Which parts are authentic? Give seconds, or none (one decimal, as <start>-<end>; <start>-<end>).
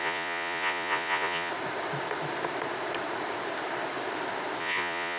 1.5-4.6